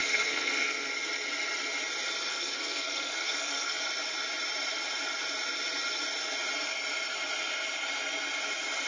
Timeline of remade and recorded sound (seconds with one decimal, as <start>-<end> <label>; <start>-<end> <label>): 0.0-0.9 remade; 0.9-2.3 recorded; 2.3-3.8 remade; 3.8-8.9 recorded